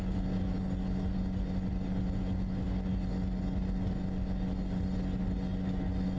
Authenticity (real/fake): real